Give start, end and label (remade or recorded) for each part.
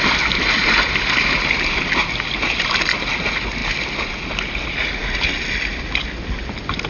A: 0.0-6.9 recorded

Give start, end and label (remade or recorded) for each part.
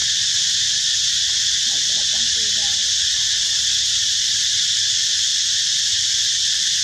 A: 0.0-2.0 recorded; 2.0-2.8 remade; 2.8-3.4 recorded; 3.4-6.8 remade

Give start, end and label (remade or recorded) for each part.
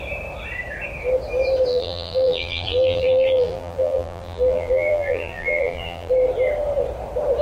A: 0.0-1.7 recorded; 1.7-6.1 remade; 6.1-7.4 recorded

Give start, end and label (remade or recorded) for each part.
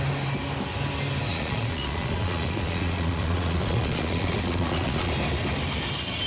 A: 0.0-1.3 recorded; 1.3-5.1 remade; 5.1-6.3 recorded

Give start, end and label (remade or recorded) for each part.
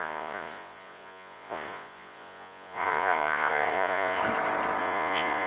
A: 0.0-4.2 remade; 4.2-4.8 recorded; 4.8-5.5 remade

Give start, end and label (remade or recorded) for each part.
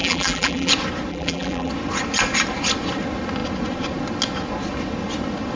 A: 0.0-0.7 remade; 0.7-1.1 recorded; 1.1-1.7 remade; 1.7-5.6 recorded